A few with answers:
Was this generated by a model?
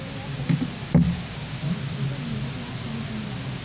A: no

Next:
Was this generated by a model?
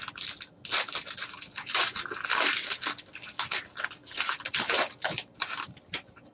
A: no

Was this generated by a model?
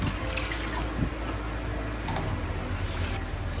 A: no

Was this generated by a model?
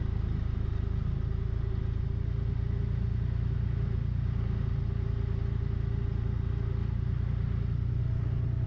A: no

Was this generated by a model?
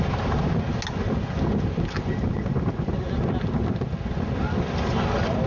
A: no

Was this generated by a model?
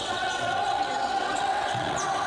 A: yes